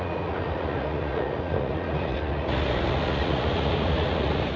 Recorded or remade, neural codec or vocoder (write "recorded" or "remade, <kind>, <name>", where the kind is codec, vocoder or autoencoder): remade, vocoder, Vocos